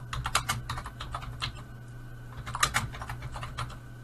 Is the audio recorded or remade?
recorded